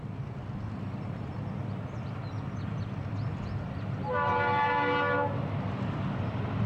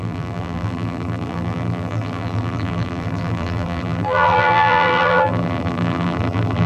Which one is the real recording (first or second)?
first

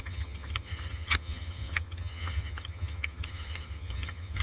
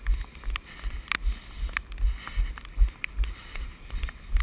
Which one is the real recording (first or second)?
second